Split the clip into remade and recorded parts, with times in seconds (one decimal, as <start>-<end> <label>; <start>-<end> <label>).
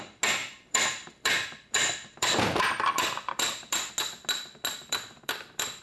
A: 0.0-0.4 recorded; 0.4-3.9 remade; 3.9-4.8 recorded; 4.8-5.8 remade